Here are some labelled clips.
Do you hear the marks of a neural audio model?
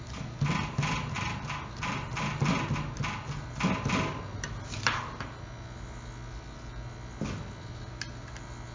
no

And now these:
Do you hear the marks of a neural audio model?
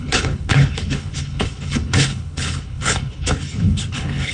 yes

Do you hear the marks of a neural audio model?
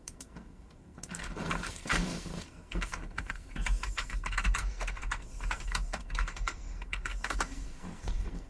yes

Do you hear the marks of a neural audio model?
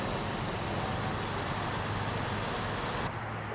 no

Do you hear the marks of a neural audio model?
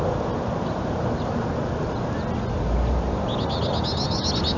no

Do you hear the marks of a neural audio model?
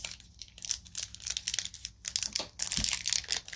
no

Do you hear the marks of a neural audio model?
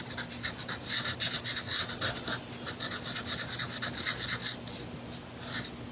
no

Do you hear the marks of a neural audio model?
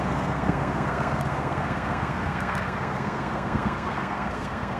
yes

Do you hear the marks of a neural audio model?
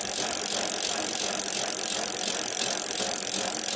no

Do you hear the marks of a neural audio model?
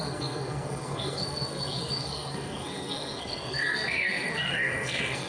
yes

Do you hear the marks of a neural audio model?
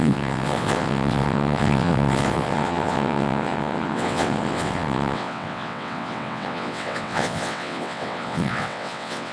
yes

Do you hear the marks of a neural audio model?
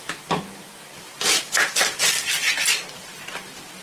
no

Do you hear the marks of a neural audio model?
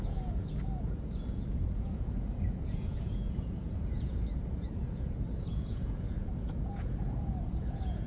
yes